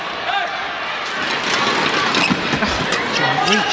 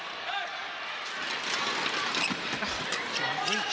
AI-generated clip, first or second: second